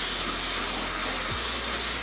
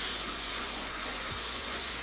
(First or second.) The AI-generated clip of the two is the second